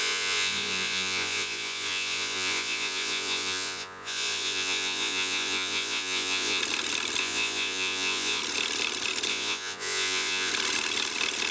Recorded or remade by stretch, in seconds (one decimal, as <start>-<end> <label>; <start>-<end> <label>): 0.0-6.6 remade; 6.6-7.2 recorded; 7.2-8.4 remade; 8.4-9.3 recorded; 9.3-10.5 remade; 10.5-11.5 recorded